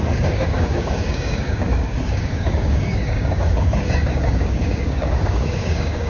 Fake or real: fake